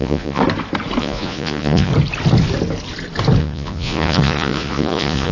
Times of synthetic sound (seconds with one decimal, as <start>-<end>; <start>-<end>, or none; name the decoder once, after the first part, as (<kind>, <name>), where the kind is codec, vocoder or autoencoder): 0.0-0.4 (vocoder, Vocos); 1.0-1.9; 3.4-5.3